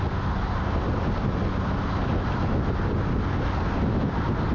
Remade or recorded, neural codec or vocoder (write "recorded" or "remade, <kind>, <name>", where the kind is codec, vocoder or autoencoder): recorded